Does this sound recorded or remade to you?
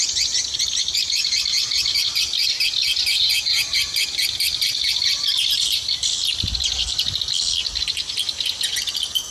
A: recorded